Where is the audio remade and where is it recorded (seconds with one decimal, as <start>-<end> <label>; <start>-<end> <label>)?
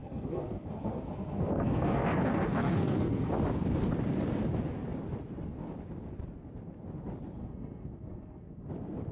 0.0-3.3 remade; 3.3-7.4 recorded; 7.4-8.7 remade; 8.7-9.1 recorded